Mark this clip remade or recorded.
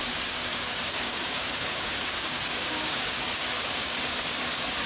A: remade